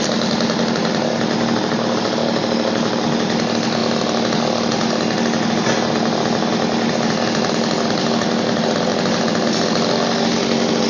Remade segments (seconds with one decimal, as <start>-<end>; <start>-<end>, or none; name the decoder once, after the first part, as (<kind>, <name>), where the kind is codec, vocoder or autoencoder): none